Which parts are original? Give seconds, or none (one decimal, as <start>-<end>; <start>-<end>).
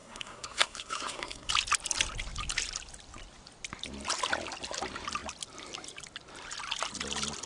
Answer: 1.5-7.5